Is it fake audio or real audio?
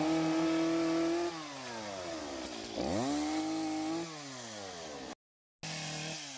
real